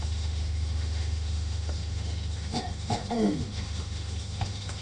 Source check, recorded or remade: remade